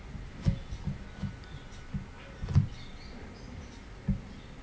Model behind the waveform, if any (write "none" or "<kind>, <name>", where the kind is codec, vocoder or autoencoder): none